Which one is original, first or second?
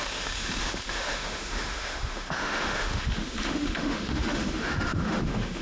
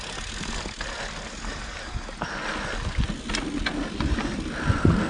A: second